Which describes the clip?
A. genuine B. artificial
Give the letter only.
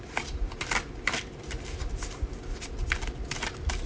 A